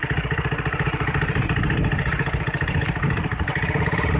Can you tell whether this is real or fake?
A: real